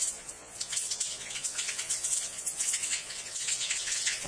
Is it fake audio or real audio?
fake